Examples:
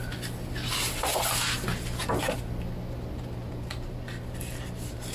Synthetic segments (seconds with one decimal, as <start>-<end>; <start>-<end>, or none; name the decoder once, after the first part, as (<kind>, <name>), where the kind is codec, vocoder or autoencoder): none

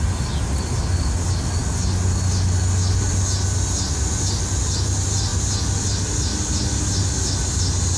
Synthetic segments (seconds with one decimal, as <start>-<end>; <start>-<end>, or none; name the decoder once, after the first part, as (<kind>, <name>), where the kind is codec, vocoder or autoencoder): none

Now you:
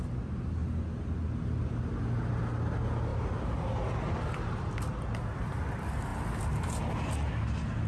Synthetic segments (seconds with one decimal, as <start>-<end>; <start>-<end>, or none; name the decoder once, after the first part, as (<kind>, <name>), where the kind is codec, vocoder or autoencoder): 6.1-6.8 (vocoder, BigVGAN v2)